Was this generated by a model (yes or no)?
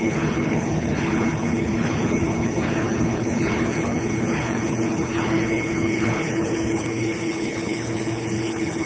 yes